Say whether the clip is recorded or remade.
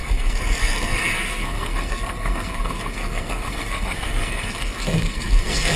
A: remade